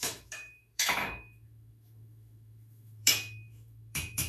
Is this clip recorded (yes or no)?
no